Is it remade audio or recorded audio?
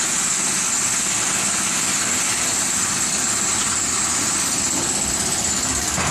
recorded